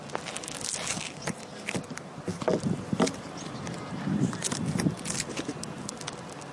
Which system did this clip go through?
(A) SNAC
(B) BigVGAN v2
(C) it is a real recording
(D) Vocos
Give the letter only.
C